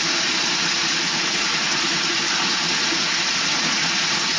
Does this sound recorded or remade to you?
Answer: remade